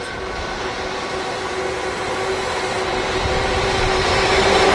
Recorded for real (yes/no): yes